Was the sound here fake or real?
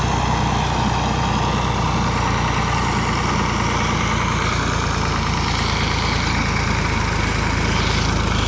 real